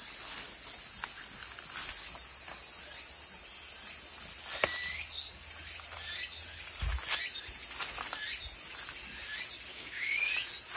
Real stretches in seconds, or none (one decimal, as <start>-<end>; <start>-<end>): 0.0-9.7; 10.3-10.8